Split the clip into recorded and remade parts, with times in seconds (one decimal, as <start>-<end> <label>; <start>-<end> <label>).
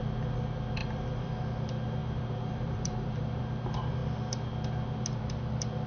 0.0-0.8 recorded; 0.8-1.4 remade; 1.4-2.0 recorded; 2.0-3.4 remade; 3.4-5.9 recorded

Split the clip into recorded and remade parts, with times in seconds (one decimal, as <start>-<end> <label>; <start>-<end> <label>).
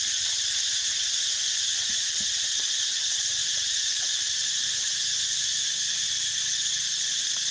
0.0-0.8 remade; 0.8-1.7 recorded; 1.7-5.1 remade; 5.1-6.6 recorded; 6.6-7.5 remade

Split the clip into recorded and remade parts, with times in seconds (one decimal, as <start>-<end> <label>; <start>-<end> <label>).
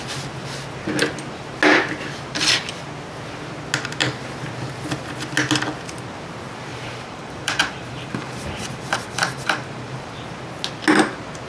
0.0-6.7 recorded; 6.7-10.1 remade; 10.1-11.5 recorded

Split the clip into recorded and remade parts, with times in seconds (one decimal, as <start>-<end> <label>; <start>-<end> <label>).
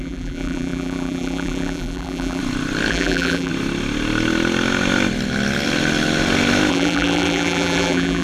0.0-2.4 remade; 2.4-2.9 recorded; 2.9-3.5 remade; 3.5-6.7 recorded; 6.7-8.2 remade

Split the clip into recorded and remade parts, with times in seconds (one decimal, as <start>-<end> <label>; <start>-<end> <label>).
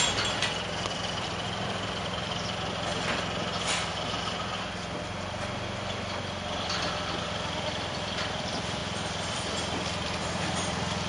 0.0-3.9 remade; 3.9-7.2 recorded; 7.2-11.1 remade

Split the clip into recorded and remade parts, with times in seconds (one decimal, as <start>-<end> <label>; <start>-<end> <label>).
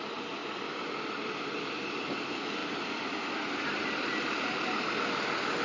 0.0-5.6 recorded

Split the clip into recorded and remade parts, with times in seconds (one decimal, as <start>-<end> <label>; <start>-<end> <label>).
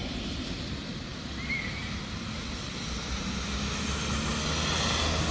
0.0-0.6 remade; 0.6-5.3 recorded